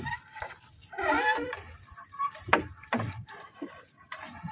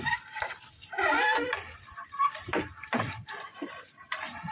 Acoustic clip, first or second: first